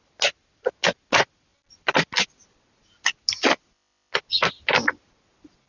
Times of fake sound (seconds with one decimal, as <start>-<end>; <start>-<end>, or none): none